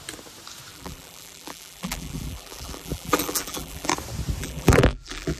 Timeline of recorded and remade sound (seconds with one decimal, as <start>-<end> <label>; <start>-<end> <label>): 0.0-0.7 recorded; 0.7-3.9 remade; 3.9-4.4 recorded; 4.4-5.4 remade